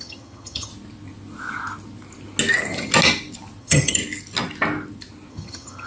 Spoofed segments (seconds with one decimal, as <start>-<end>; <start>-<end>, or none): 0.0-0.7; 3.6-4.0; 5.3-5.9